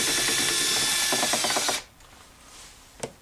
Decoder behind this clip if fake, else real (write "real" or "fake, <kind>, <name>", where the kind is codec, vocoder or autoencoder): real